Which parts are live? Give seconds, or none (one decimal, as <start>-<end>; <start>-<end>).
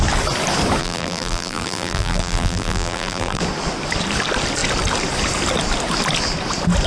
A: 0.0-0.8; 3.4-6.9